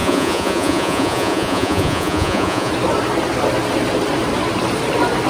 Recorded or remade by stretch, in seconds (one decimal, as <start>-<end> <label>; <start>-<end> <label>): 0.0-2.7 remade; 2.7-5.3 recorded